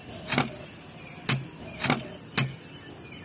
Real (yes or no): yes